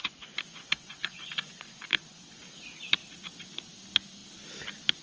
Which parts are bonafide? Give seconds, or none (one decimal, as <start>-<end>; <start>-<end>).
2.4-5.0